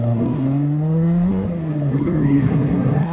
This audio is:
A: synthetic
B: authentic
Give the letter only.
A